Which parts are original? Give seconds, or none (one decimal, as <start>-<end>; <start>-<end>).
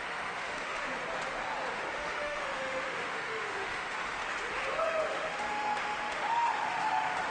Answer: 0.9-1.7; 4.2-4.8